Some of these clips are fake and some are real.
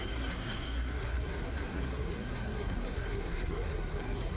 fake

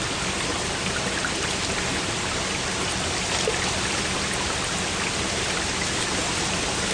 real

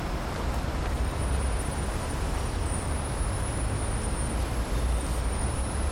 real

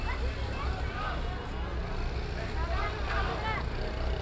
real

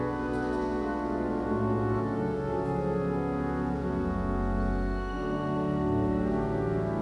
real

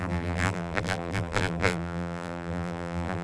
fake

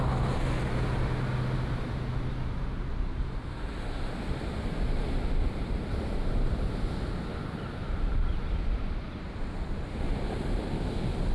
real